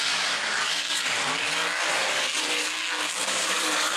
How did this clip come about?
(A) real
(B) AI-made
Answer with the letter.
B